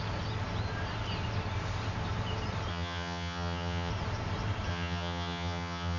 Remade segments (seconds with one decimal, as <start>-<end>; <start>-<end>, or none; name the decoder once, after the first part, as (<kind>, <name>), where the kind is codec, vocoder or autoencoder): 2.7-3.9 (vocoder, HiFi-GAN); 4.7-6.0